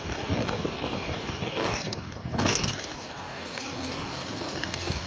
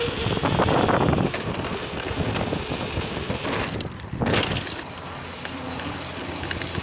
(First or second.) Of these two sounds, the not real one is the first